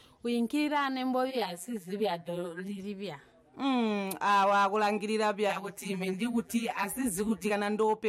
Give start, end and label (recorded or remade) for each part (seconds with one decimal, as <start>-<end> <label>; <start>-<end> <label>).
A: 0.0-1.3 recorded; 1.3-2.8 remade; 2.8-5.5 recorded; 5.5-7.5 remade; 7.5-8.1 recorded